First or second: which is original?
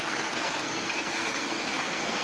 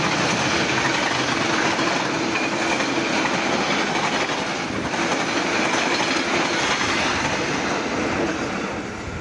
second